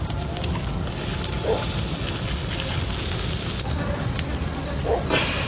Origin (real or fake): real